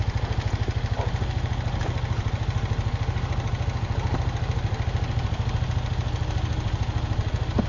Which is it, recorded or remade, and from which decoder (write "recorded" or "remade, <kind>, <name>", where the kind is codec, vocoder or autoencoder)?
recorded